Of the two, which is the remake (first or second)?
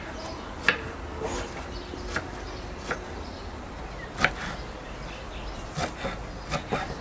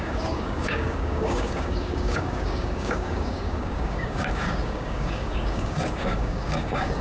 second